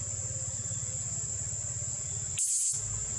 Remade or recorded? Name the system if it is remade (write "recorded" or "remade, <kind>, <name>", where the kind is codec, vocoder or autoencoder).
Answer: recorded